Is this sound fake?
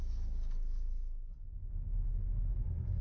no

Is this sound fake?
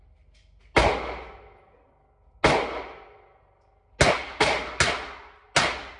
no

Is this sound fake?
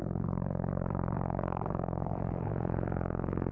yes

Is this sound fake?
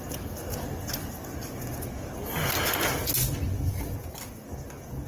no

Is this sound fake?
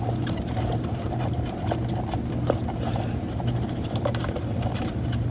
yes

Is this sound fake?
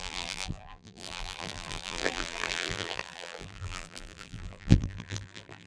yes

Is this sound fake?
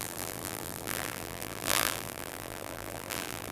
yes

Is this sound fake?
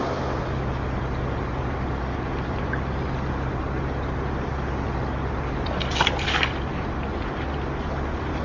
no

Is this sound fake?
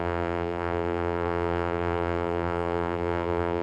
yes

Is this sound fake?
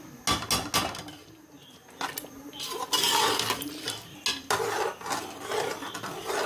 no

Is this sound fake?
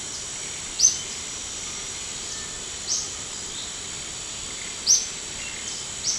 no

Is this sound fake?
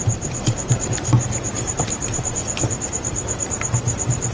yes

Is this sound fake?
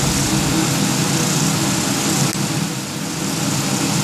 no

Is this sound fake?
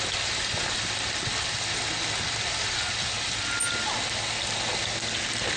no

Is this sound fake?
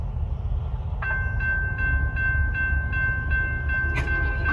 no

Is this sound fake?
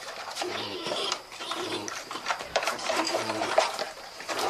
yes